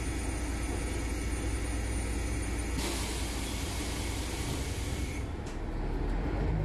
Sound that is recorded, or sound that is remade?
recorded